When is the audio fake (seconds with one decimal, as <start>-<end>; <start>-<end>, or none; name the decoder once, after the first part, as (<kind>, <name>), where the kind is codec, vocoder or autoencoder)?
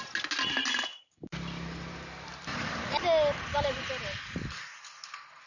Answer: none